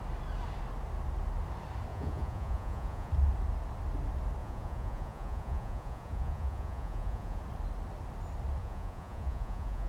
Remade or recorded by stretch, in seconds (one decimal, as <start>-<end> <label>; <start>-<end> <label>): 0.0-1.9 recorded; 1.9-3.1 remade; 3.1-4.4 recorded; 4.4-7.4 remade; 7.4-8.6 recorded; 8.6-9.9 remade